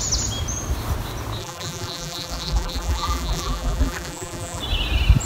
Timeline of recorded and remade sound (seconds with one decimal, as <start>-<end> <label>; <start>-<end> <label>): 0.0-1.4 recorded; 1.4-4.6 remade; 4.6-5.3 recorded